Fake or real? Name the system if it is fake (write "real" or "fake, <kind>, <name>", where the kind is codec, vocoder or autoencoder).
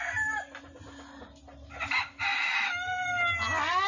real